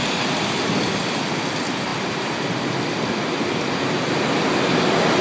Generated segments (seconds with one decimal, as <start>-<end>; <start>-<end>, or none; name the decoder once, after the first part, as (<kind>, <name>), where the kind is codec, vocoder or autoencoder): none